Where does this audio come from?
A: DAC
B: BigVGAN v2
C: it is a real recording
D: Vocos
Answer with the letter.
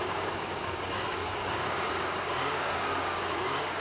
A